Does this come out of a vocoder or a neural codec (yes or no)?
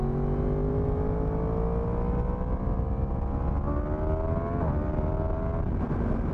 no